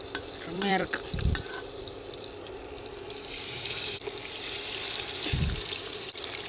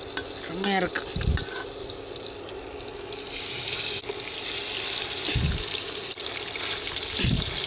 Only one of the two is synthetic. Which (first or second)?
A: first